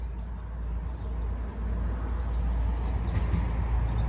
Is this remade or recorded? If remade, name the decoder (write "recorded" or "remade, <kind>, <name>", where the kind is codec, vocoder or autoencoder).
recorded